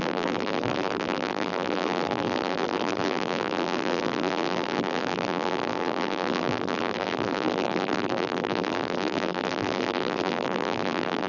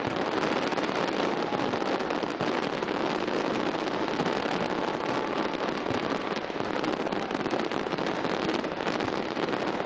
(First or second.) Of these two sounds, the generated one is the first